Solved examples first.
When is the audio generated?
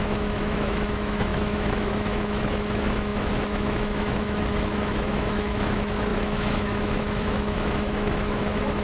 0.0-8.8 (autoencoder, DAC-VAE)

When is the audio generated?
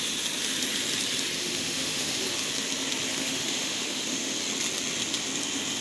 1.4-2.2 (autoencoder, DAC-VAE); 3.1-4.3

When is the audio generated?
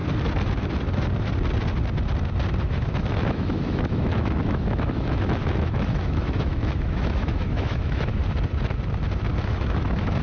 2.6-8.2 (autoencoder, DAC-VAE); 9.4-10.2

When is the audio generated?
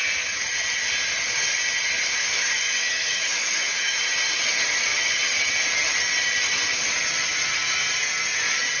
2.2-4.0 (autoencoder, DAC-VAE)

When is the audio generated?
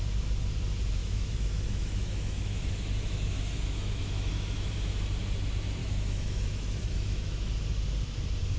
1.0-4.7 (autoencoder, DAC-VAE); 5.8-7.5